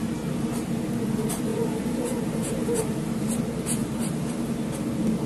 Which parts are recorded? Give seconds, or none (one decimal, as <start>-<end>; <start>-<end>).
0.0-1.5; 3.2-3.8; 4.5-5.3